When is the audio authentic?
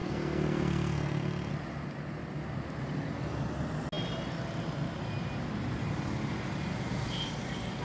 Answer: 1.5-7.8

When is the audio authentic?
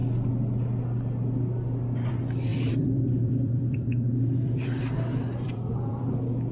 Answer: 0.0-2.5; 6.0-6.5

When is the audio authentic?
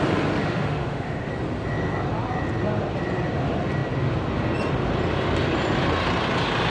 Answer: 0.0-0.4; 1.3-6.7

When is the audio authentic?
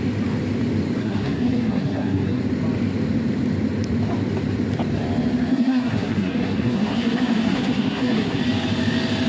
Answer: 0.0-1.0; 2.4-5.5; 8.4-9.3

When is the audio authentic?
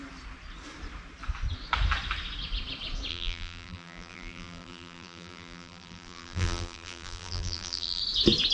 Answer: 0.0-3.1; 8.0-8.5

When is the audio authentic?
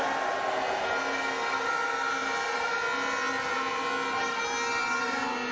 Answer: 0.0-5.5